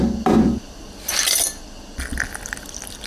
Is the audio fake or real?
real